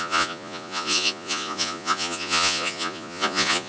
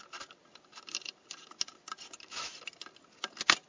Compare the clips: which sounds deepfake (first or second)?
first